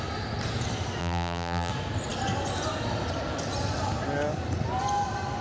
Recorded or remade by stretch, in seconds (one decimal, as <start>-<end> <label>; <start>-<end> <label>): 0.0-1.0 recorded; 1.0-1.7 remade; 1.7-5.4 recorded